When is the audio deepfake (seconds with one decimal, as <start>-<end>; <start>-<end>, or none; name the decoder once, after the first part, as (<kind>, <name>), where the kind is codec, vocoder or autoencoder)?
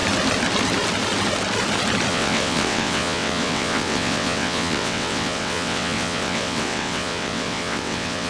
2.1-8.3 (vocoder, WaveNeXt)